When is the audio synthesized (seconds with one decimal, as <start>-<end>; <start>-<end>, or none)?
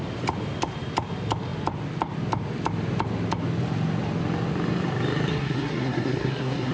5.3-6.7